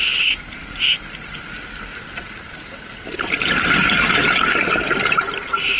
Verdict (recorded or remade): recorded